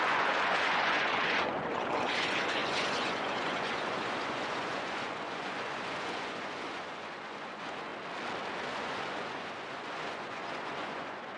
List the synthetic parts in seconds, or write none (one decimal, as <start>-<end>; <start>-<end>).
0.0-7.9; 8.7-11.4